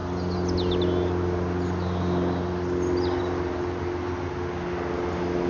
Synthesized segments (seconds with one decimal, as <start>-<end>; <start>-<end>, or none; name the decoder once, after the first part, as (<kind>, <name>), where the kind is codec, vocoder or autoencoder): none